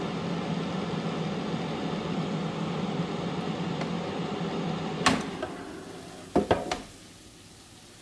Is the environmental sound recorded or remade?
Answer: recorded